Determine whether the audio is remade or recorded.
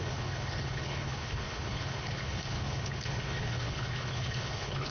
remade